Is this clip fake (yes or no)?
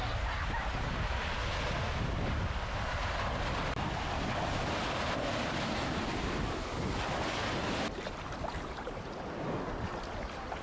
no